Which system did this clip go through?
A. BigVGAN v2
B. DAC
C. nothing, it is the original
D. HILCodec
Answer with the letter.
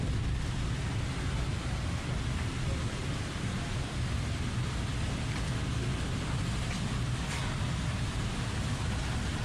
C